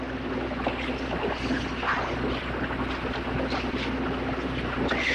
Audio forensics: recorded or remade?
recorded